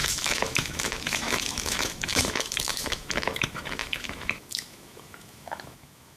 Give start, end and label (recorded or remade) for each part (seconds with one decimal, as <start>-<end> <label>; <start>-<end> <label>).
0.0-6.2 remade